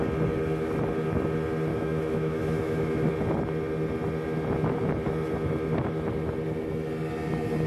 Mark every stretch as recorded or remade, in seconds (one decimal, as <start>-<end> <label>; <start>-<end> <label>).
0.0-1.7 recorded; 1.7-3.1 remade; 3.1-7.7 recorded